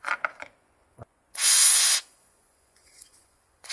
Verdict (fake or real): fake